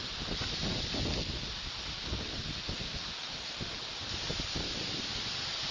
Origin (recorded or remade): recorded